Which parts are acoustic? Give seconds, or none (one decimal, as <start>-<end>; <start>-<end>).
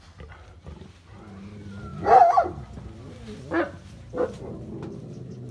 0.0-5.5